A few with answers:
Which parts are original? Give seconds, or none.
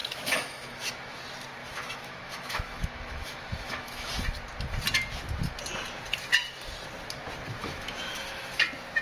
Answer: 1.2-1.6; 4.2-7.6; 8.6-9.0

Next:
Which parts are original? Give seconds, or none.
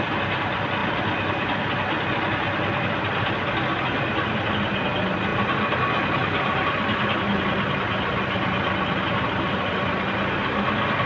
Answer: 0.0-11.1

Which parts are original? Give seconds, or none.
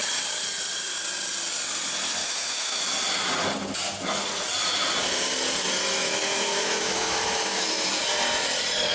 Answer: 0.0-2.2; 2.8-6.0; 7.9-8.9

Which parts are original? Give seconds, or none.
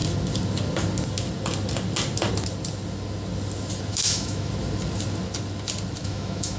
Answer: 0.0-3.9; 4.5-6.0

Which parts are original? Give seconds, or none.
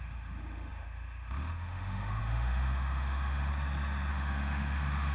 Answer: 3.5-4.1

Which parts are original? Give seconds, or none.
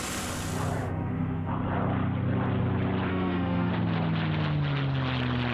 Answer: 0.0-0.8; 1.5-3.1; 3.7-5.5